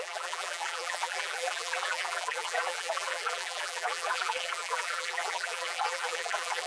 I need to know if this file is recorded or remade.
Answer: remade